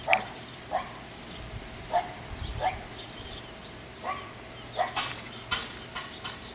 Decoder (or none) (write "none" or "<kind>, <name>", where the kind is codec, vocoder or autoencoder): vocoder, BigVGAN v2